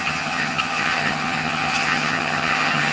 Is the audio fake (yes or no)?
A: yes